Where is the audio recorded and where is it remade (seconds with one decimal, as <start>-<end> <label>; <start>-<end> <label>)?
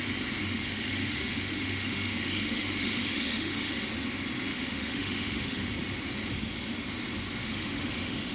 0.0-0.4 recorded; 0.4-3.8 remade; 3.8-4.5 recorded; 4.5-5.7 remade; 5.7-7.4 recorded; 7.4-8.3 remade